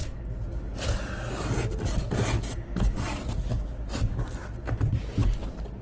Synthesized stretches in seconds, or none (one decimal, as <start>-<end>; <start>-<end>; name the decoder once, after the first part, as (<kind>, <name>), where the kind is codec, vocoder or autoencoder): none